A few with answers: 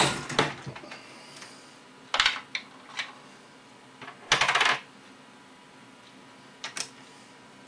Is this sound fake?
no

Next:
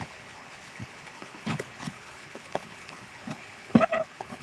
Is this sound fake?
yes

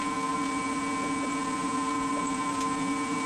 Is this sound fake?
no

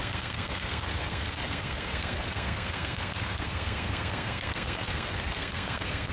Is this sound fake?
yes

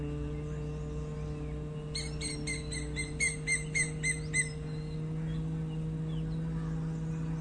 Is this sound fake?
no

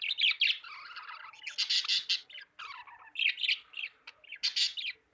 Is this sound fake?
no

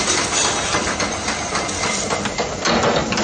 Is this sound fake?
no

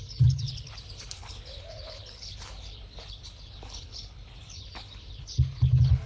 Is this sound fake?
yes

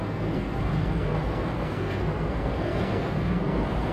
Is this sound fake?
yes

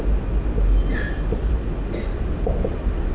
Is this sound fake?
no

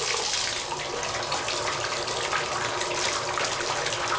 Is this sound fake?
no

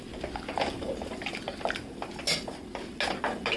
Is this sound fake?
no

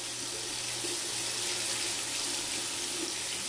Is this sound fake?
no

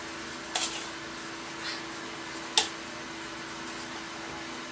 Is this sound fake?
no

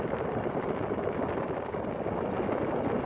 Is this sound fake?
no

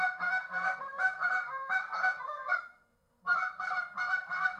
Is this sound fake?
yes